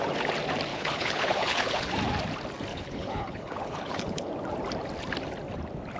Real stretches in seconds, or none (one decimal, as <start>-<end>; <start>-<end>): 0.0-0.7; 1.9-2.7; 4.3-6.0